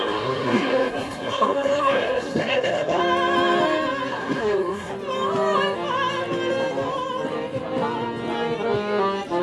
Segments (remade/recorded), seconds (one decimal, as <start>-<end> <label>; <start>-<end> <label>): 0.0-3.0 remade; 3.0-4.1 recorded; 4.1-4.9 remade; 4.9-9.4 recorded